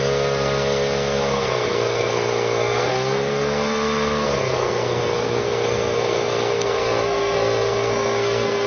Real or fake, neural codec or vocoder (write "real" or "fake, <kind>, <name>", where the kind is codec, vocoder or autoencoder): fake, codec, SNAC